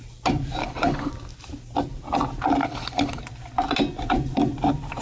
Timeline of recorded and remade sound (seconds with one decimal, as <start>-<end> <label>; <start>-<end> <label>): 0.0-0.6 recorded; 0.6-1.1 remade; 1.1-2.6 recorded; 2.6-3.2 remade; 3.2-5.0 recorded